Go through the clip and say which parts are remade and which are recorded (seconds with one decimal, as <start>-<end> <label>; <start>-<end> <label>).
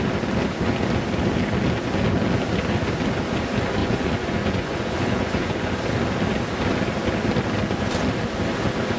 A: 0.0-3.8 recorded; 3.8-5.7 remade; 5.7-9.0 recorded